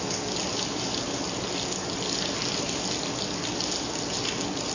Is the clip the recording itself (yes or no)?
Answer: yes